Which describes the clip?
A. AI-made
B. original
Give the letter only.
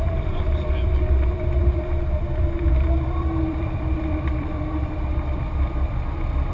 A